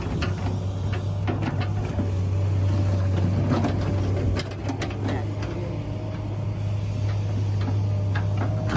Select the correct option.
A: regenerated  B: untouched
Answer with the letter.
B